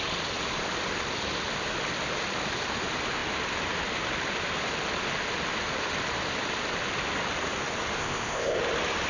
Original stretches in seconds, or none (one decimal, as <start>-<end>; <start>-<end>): 0.0-8.0; 8.6-9.1